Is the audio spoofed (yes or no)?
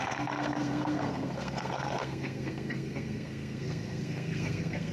yes